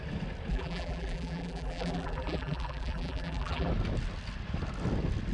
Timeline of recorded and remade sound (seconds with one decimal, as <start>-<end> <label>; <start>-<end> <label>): 0.0-0.5 recorded; 0.5-3.7 remade; 3.7-5.3 recorded